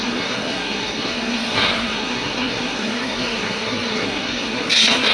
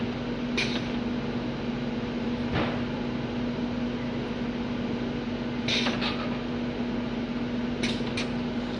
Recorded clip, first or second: second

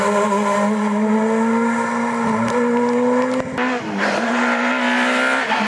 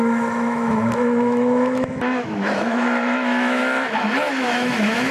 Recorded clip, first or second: first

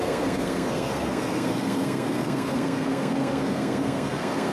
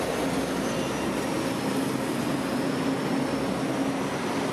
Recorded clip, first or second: second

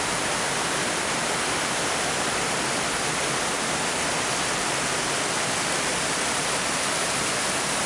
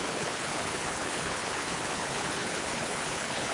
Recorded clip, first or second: first